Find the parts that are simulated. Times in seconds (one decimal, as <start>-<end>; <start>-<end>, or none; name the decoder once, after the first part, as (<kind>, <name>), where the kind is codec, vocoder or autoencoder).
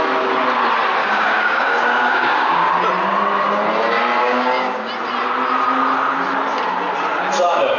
1.0-2.7 (codec, DAC); 4.2-4.9